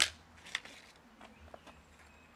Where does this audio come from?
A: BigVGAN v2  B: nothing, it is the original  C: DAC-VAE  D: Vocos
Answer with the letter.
B